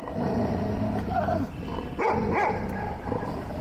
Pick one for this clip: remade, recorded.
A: remade